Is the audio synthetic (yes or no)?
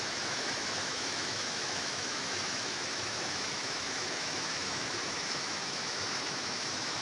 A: yes